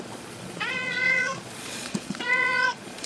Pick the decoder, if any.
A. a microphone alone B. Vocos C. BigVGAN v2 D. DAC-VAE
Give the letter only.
B